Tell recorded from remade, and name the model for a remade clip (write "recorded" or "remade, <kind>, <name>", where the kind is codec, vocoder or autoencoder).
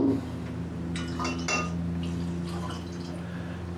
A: recorded